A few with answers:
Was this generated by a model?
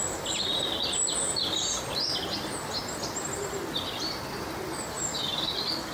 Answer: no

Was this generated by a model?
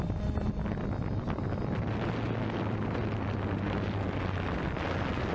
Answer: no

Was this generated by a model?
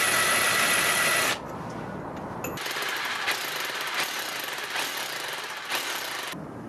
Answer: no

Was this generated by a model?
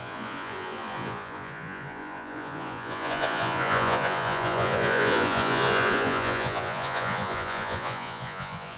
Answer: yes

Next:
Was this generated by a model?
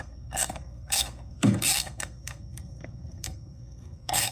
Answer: yes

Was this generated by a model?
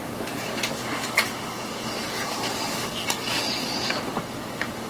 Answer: yes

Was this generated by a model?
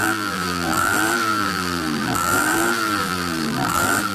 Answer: yes